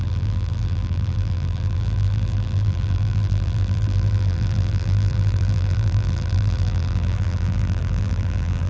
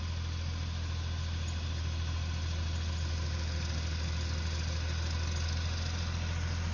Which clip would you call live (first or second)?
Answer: second